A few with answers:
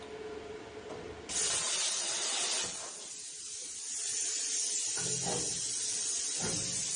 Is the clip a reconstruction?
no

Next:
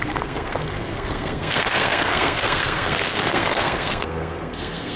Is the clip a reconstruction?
yes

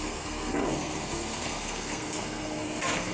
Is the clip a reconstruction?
yes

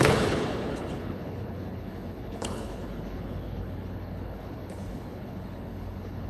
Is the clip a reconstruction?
yes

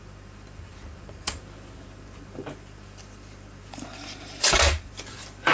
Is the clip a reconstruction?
yes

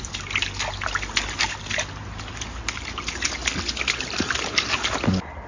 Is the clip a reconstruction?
no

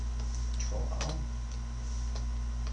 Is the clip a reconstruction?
no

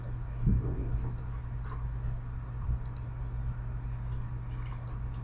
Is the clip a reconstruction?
no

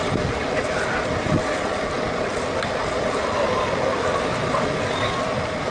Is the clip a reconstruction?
no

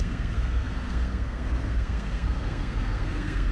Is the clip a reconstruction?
yes